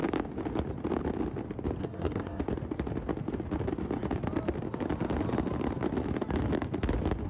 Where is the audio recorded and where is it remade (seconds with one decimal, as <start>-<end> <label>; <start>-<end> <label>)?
0.0-1.8 recorded; 1.8-2.4 remade; 2.4-7.3 recorded